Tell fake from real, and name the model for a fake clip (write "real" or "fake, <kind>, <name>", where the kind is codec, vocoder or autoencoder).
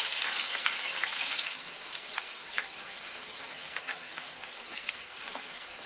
fake, codec, SNAC